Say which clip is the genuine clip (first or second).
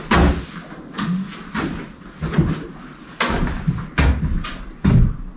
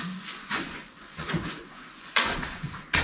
first